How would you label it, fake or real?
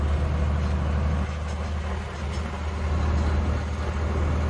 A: real